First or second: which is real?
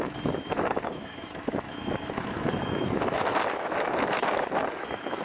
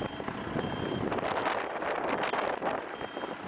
second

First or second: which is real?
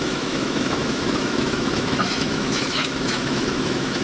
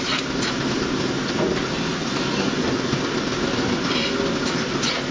second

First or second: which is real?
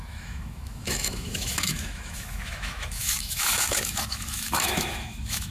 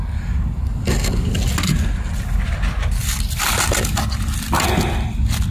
second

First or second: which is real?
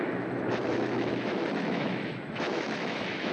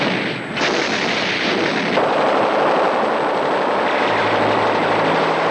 second